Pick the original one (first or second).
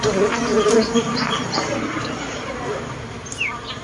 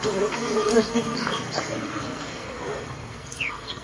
first